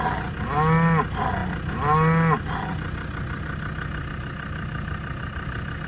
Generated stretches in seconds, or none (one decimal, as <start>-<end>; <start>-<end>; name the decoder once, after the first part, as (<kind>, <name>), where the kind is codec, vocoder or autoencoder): none